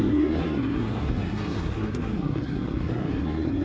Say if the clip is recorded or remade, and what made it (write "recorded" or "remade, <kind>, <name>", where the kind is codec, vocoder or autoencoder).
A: remade, codec, SNAC